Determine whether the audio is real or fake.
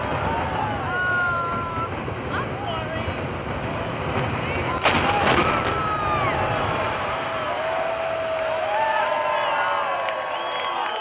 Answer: real